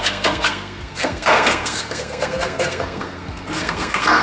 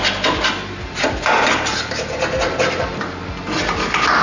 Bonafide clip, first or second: second